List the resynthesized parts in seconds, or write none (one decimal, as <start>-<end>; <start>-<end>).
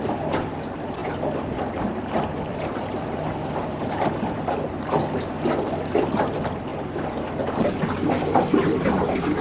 2.5-4.6; 6.7-7.2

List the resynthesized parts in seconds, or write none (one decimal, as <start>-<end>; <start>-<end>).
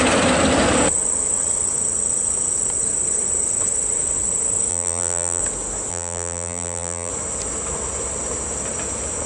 4.7-5.4; 5.9-7.1